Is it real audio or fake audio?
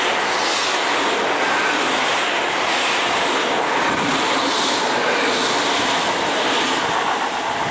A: real